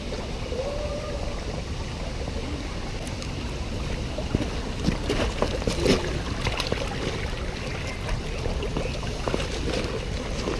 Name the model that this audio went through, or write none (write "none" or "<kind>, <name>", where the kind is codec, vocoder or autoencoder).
none